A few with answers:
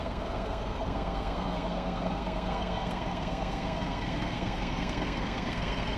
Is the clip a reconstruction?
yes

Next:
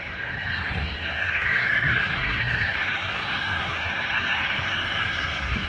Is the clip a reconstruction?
yes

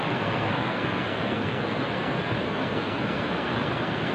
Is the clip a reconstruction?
yes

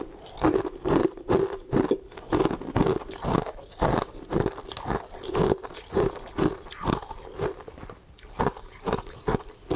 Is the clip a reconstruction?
no